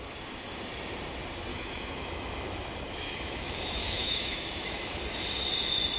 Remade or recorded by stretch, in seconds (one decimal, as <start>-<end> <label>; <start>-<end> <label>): 0.0-1.5 recorded; 1.5-5.0 remade; 5.0-6.0 recorded